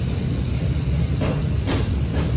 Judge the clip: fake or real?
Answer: real